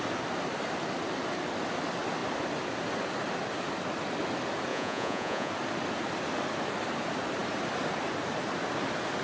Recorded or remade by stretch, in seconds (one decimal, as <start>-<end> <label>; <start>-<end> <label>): 0.0-4.7 recorded; 4.7-5.5 remade; 5.5-9.2 recorded